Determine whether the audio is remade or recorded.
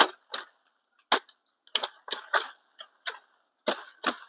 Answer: recorded